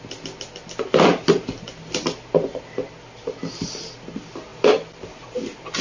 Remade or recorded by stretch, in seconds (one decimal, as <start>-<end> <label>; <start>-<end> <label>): 0.0-5.8 recorded